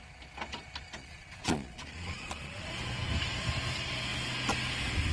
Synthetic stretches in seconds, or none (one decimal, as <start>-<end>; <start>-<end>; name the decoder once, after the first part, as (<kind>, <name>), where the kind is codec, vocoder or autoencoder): 1.0-2.7 (vocoder, Vocos)